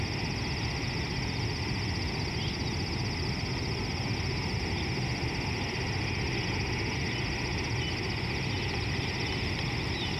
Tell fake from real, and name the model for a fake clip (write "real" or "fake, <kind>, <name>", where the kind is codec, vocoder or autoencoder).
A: real